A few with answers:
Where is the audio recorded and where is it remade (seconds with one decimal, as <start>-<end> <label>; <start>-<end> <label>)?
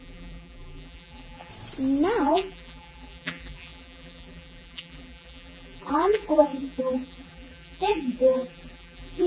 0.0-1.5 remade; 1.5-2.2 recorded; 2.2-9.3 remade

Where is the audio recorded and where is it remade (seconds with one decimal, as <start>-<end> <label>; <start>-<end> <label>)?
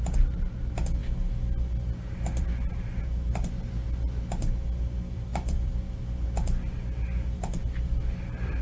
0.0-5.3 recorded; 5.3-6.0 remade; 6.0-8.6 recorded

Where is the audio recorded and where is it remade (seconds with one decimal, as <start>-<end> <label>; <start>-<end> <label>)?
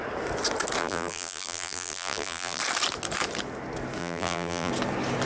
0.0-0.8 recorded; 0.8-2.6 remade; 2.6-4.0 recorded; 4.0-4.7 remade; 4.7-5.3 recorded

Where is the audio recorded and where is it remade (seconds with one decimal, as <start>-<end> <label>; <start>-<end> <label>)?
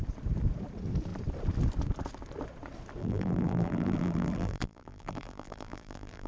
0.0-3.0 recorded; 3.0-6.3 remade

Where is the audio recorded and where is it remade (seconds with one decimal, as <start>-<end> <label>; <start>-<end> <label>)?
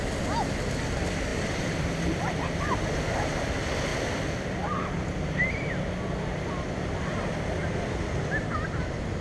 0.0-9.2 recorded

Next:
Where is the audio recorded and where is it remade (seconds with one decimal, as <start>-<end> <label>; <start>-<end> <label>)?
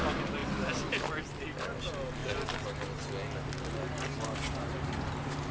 0.0-5.5 recorded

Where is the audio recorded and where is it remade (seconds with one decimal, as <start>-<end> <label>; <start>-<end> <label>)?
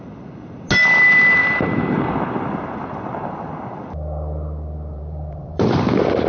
0.0-1.4 recorded; 1.4-3.5 remade; 3.5-4.9 recorded; 4.9-6.3 remade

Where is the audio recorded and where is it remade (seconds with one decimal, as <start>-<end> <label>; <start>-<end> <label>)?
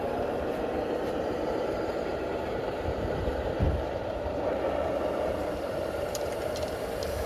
0.0-7.3 remade